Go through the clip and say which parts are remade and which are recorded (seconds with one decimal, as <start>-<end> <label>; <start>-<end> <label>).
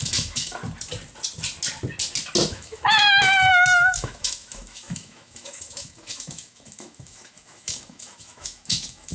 0.0-0.6 remade; 0.6-2.5 recorded; 2.5-9.1 remade